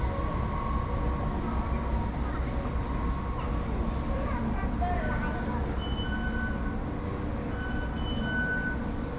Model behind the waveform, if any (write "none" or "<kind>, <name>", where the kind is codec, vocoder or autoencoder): none